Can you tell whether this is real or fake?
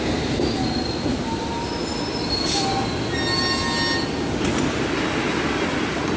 real